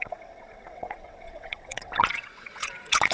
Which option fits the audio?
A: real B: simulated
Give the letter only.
B